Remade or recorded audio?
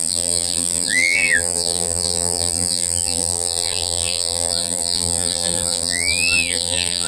remade